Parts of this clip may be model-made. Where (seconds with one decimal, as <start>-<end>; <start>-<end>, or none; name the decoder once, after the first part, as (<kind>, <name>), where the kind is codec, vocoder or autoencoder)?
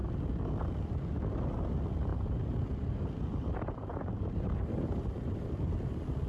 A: 2.1-5.7 (vocoder, BigVGAN v2)